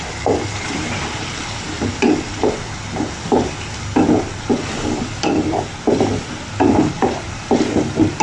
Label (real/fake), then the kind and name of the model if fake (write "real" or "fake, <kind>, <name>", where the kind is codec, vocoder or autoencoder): fake, vocoder, BigVGAN v2